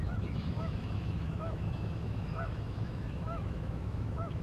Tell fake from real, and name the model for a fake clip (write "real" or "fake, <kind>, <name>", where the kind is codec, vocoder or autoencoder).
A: fake, autoencoder, DAC-VAE